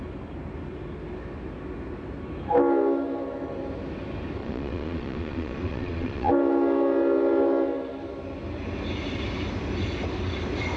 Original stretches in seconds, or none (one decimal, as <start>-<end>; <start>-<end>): 0.0-4.4; 6.3-10.8